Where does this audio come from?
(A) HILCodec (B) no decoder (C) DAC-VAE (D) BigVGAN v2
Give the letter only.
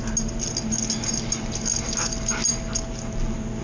B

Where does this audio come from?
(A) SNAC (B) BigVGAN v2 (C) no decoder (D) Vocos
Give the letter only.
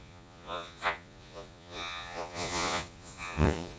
D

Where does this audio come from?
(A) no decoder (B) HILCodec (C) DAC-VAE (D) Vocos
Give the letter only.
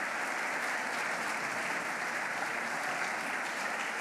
A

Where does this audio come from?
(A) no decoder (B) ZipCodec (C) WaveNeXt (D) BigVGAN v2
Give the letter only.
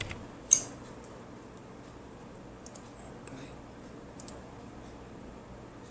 A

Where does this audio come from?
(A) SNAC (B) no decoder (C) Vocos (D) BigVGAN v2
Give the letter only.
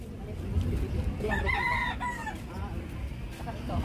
B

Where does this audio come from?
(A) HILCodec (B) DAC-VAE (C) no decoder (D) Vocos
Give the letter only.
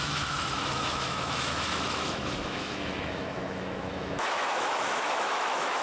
B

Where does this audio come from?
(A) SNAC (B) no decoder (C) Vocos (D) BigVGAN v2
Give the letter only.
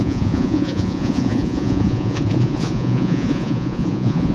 C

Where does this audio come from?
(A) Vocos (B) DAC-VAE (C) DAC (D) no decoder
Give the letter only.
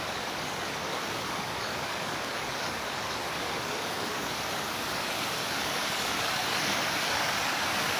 C